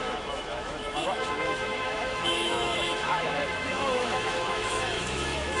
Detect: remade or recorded remade